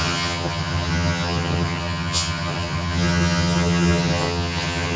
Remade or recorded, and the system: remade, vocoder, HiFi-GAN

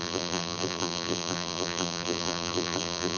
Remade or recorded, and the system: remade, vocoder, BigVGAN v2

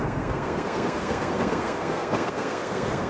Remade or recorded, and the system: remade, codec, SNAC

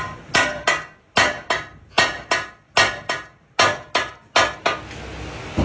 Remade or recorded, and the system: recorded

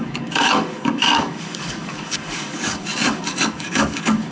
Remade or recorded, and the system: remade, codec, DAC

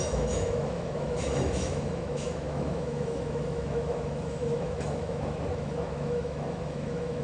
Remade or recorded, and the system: remade, autoencoder, DAC-VAE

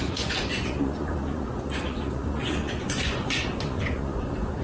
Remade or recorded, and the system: remade, vocoder, Vocos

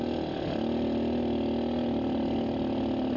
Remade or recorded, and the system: recorded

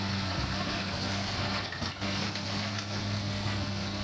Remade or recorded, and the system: remade, codec, SNAC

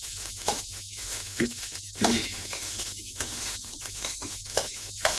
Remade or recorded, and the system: remade, autoencoder, DAC-VAE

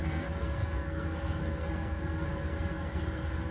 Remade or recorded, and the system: remade, codec, SNAC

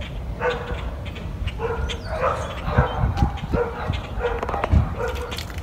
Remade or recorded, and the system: recorded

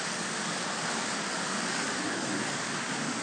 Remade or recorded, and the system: remade, codec, DAC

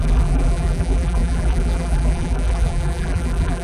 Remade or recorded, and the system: remade, vocoder, BigVGAN v2